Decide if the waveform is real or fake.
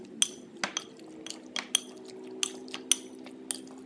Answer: real